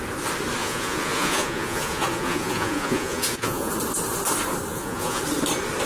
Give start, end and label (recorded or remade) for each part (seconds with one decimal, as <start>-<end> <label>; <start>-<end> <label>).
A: 0.0-0.6 recorded; 0.6-3.7 remade; 3.7-4.7 recorded; 4.7-5.2 remade; 5.2-5.9 recorded